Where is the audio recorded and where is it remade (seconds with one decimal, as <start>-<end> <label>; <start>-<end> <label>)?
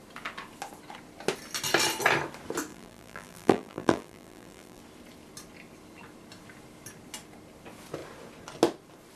0.0-2.7 recorded; 2.7-4.8 remade; 4.8-9.2 recorded